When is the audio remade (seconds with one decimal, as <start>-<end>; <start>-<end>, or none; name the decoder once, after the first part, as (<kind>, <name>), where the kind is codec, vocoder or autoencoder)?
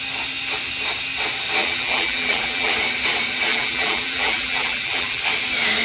1.6-2.7 (vocoder, BigVGAN v2); 3.5-5.2